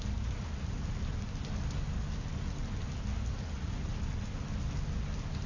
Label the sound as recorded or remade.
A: recorded